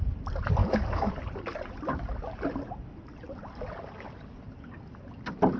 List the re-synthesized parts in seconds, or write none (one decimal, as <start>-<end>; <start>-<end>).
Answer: 0.6-1.1